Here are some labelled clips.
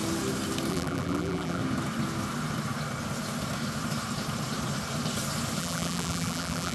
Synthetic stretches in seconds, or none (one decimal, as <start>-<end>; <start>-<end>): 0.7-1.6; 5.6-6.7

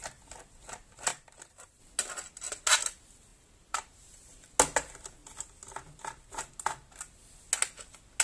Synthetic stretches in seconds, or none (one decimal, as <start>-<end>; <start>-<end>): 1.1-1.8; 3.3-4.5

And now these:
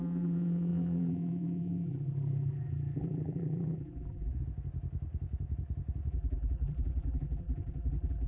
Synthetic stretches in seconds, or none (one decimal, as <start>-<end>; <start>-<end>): 0.0-4.3; 6.1-8.3